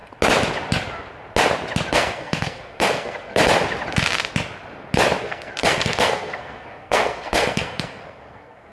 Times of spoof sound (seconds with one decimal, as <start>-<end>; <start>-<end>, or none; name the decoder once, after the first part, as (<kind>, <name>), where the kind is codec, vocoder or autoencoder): 1.9-3.4 (codec, SNAC); 5.2-8.7